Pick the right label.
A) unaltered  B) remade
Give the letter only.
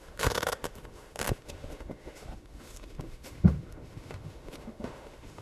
B